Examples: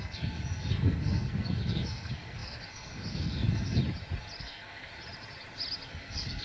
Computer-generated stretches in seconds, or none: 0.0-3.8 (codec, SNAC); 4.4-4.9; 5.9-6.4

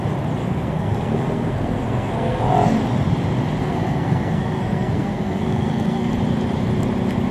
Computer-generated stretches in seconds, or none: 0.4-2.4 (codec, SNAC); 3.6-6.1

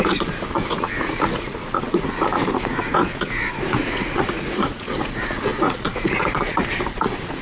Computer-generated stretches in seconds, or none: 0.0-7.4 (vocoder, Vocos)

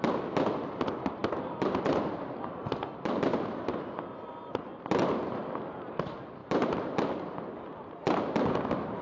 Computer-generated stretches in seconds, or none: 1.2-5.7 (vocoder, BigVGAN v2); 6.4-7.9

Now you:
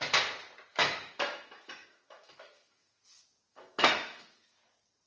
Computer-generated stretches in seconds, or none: 0.7-3.0 (autoencoder, DAC-VAE); 3.5-4.5

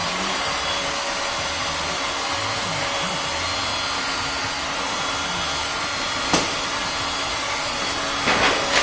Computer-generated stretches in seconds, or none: 0.0-0.7 (vocoder, BigVGAN v2); 4.4-5.1

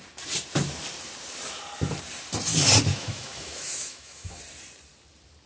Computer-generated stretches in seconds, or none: 2.9-4.4 (autoencoder, DAC-VAE)

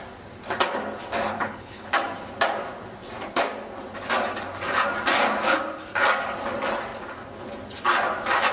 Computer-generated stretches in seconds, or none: 1.3-1.9 (codec, HILCodec)